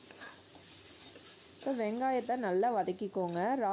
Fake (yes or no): no